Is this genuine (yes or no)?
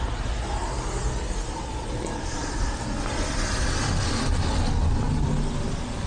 yes